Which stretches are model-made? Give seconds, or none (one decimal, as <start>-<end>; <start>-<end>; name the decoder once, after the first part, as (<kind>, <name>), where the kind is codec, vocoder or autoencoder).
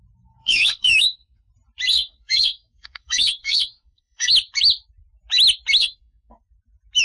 0.4-1.5 (codec, SNAC); 1.9-4.3; 5.8-6.4